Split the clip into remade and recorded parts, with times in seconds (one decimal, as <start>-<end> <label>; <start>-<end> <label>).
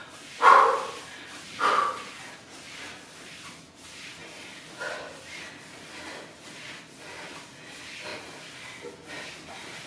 0.0-9.9 recorded